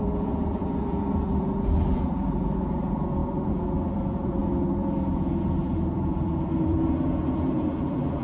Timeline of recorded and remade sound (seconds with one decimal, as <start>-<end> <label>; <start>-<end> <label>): 0.0-8.2 remade